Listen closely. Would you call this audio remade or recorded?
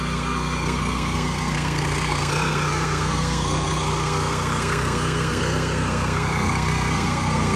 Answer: remade